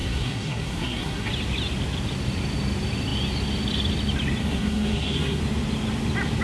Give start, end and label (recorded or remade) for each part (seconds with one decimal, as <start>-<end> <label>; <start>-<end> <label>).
0.0-1.3 remade; 1.3-4.4 recorded; 4.4-5.4 remade; 5.4-6.4 recorded